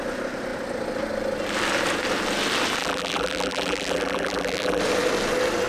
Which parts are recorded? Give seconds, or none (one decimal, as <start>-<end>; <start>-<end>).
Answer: 0.0-2.8; 4.8-5.7